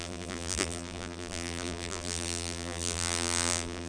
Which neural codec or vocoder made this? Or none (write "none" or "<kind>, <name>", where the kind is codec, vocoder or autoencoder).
vocoder, BigVGAN v2